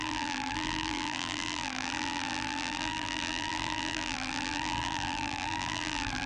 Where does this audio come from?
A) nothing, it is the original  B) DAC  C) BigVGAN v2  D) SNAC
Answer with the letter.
C